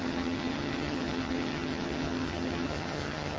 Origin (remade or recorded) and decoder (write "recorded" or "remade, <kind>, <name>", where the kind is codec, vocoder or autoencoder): remade, vocoder, HiFi-GAN